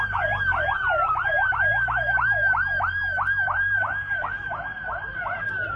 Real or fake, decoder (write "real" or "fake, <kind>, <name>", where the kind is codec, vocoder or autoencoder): fake, vocoder, BigVGAN v2